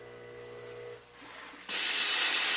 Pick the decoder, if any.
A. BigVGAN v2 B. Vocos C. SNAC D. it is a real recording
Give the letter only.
D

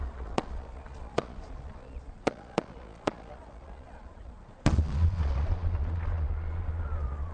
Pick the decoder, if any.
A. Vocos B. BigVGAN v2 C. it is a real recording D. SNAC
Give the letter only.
A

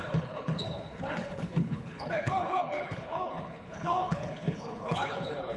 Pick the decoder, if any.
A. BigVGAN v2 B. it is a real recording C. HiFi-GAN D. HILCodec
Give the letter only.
D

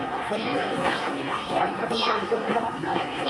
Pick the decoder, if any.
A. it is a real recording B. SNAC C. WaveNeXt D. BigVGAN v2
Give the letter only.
B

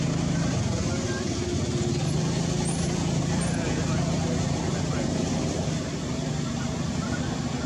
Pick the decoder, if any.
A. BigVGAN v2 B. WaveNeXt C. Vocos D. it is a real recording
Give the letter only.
D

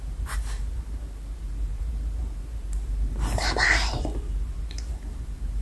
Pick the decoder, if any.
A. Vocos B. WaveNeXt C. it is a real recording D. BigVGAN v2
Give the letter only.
D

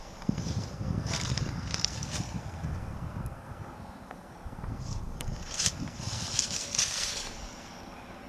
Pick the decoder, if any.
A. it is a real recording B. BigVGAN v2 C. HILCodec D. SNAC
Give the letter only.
D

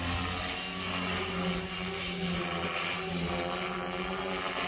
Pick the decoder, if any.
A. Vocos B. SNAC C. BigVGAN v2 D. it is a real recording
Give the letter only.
D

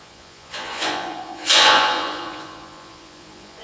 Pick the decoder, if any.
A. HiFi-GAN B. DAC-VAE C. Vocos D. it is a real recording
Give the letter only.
C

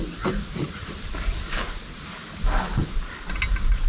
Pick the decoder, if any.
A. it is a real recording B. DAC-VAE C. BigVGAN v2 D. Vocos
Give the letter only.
A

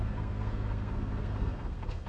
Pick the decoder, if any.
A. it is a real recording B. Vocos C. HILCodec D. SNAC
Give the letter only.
D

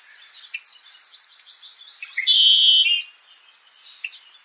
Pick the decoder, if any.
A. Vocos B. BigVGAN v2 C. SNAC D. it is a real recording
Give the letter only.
D